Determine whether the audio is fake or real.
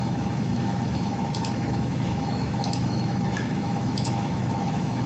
fake